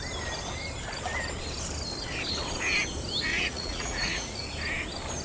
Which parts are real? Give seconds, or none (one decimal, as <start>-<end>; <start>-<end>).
0.0-3.3; 4.4-5.2